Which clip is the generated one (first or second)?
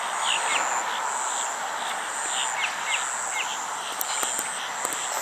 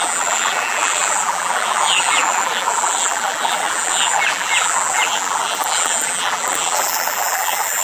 second